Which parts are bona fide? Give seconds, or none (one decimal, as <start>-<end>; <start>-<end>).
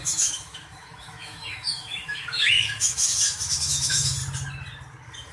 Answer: 4.2-5.3